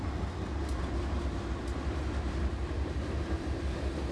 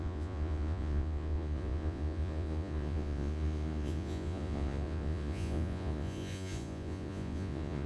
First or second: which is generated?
second